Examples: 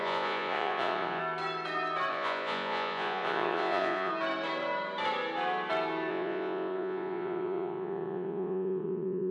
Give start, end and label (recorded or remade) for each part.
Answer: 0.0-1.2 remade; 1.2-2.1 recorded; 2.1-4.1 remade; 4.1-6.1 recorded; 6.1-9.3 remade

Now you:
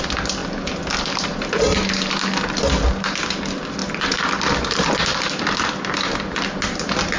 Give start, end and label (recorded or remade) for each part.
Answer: 0.0-7.2 recorded

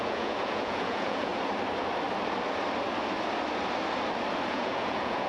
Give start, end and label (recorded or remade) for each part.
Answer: 0.0-1.3 remade; 1.3-4.5 recorded; 4.5-5.3 remade

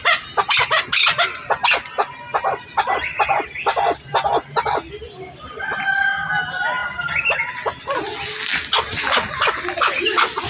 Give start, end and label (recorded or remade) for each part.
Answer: 0.0-10.5 recorded

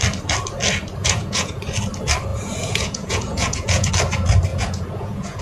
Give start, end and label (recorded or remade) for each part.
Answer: 0.0-1.0 recorded; 1.0-1.6 remade; 1.6-2.3 recorded; 2.3-3.9 remade; 3.9-4.5 recorded; 4.5-5.4 remade

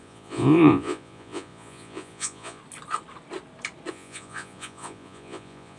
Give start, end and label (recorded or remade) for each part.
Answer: 0.0-2.6 remade; 2.6-3.9 recorded; 3.9-5.8 remade